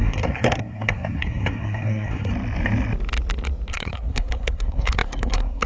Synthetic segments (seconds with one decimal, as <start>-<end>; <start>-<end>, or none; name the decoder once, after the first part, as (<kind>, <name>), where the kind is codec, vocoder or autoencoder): 0.0-2.3 (codec, SNAC); 3.7-5.7